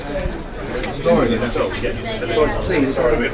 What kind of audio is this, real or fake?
real